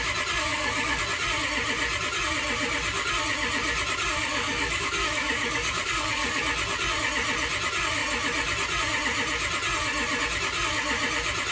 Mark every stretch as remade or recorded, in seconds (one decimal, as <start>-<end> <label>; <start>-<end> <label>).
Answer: 0.0-0.5 recorded; 0.5-1.0 remade; 1.0-4.3 recorded; 4.3-6.4 remade; 6.4-11.5 recorded